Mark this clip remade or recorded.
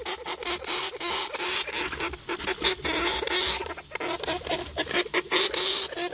recorded